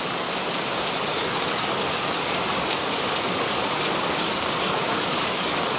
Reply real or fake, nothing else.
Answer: fake